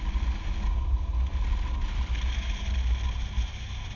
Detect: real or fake real